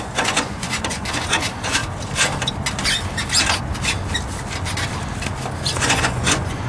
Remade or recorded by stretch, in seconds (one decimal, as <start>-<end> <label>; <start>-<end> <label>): 0.0-1.8 remade; 1.8-5.8 recorded; 5.8-6.7 remade